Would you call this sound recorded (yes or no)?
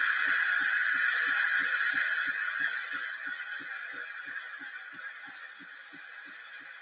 yes